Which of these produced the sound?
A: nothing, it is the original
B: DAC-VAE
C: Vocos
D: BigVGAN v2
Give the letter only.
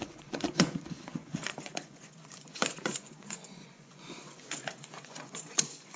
C